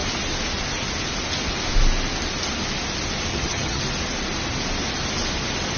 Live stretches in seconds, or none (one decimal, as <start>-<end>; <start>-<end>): 0.0-3.3; 3.8-5.8